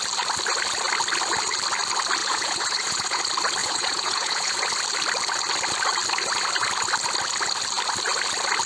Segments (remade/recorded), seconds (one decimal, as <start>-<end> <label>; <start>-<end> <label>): 0.0-2.2 recorded; 2.2-3.2 remade; 3.2-3.6 recorded; 3.6-4.6 remade; 4.6-8.7 recorded